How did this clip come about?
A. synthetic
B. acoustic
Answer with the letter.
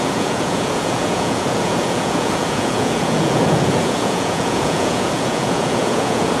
A